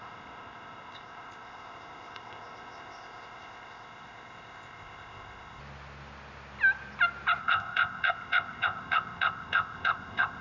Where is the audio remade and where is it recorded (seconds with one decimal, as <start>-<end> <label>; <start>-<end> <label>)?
0.0-5.6 remade; 5.6-7.4 recorded; 7.4-10.4 remade